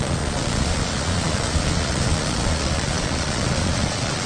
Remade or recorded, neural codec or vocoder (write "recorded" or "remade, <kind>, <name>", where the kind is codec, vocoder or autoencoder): remade, vocoder, Vocos